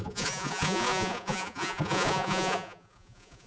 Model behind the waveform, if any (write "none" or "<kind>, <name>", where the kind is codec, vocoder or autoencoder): vocoder, Vocos